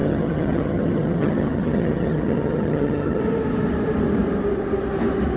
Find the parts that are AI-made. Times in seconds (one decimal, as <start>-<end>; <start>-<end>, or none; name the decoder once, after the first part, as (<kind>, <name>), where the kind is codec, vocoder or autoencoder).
0.0-3.2 (vocoder, HiFi-GAN)